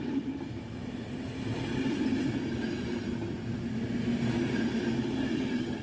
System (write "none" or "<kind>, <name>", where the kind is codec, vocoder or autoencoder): none